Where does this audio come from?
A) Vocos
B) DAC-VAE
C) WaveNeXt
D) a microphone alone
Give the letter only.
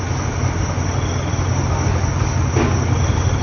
D